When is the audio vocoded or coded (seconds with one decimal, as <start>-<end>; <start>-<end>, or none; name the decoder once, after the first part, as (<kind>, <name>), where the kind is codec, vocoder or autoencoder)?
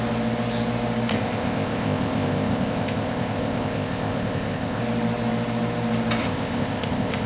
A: 1.1-4.8 (codec, ZipCodec); 6.2-7.3